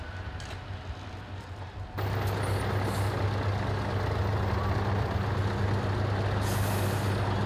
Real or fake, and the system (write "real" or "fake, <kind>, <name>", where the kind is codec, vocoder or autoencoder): real